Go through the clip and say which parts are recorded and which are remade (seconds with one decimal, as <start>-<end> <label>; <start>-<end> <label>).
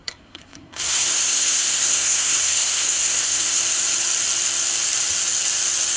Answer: 0.0-3.6 remade; 3.6-6.0 recorded